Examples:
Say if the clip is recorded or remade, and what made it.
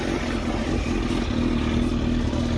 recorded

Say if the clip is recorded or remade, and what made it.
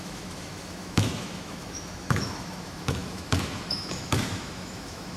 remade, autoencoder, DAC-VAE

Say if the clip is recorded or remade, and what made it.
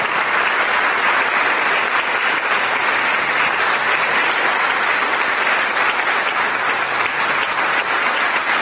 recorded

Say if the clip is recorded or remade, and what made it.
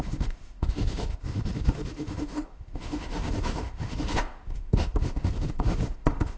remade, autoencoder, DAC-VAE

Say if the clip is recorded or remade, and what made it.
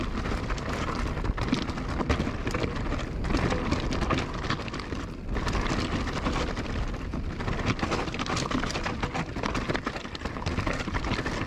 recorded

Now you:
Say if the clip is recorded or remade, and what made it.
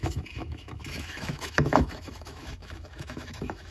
remade, autoencoder, DAC-VAE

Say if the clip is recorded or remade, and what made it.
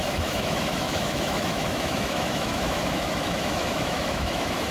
remade, autoencoder, DAC-VAE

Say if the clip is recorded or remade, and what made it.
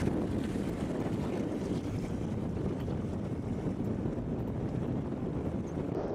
recorded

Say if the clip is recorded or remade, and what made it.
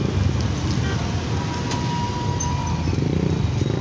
recorded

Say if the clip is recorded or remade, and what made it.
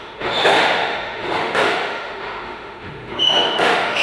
remade, autoencoder, DAC-VAE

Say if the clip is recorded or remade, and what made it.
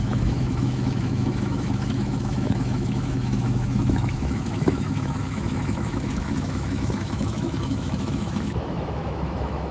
remade, autoencoder, DAC-VAE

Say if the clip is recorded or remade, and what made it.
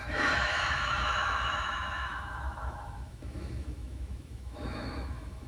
remade, autoencoder, DAC-VAE